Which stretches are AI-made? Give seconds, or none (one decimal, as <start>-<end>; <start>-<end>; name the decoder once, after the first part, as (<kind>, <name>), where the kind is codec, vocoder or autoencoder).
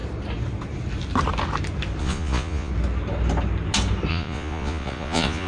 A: 2.0-2.7 (vocoder, Vocos); 4.1-5.5